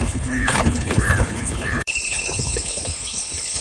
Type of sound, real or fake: fake